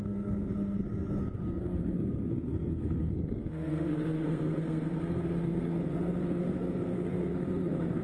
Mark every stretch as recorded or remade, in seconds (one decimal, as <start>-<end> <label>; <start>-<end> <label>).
0.0-8.0 remade